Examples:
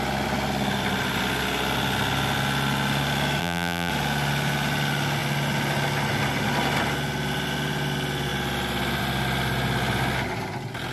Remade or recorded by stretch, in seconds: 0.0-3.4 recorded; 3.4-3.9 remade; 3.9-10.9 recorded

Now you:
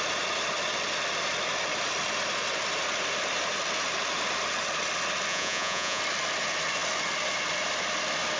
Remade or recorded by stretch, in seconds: 0.0-5.3 recorded; 5.3-6.0 remade; 6.0-8.4 recorded

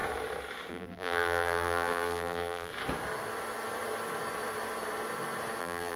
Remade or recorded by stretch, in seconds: 0.0-0.7 recorded; 0.7-2.7 remade; 2.7-5.6 recorded; 5.6-6.0 remade

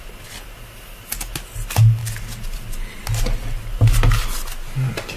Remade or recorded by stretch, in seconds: 0.0-5.2 recorded

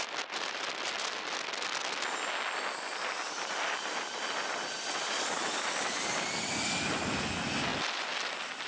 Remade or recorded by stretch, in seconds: 0.0-8.7 recorded

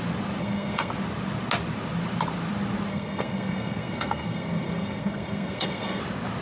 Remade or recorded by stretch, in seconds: 0.0-0.4 recorded; 0.4-0.9 remade; 0.9-2.9 recorded; 2.9-6.0 remade; 6.0-6.4 recorded